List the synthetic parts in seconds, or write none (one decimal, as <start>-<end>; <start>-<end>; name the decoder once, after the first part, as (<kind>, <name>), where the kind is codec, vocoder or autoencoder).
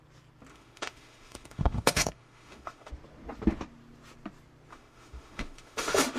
0.5-2.9 (autoencoder, DAC-VAE); 4.7-6.2